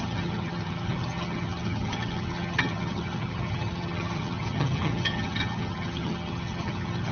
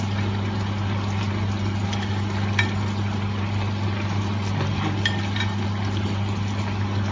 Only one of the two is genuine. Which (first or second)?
second